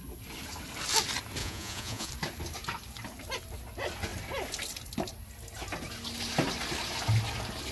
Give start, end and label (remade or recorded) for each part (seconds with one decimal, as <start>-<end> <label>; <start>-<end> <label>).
0.0-1.4 recorded; 1.4-2.1 remade; 2.1-7.7 recorded